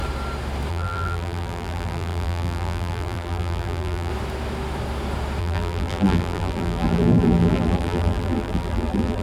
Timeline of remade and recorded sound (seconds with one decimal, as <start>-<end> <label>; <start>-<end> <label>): 0.0-0.7 recorded; 0.7-4.1 remade; 4.1-5.4 recorded; 5.4-9.2 remade